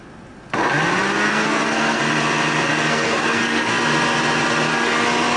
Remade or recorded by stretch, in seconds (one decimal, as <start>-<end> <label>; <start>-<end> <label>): 0.0-1.3 recorded; 1.3-2.0 remade; 2.0-2.7 recorded; 2.7-3.7 remade; 3.7-5.4 recorded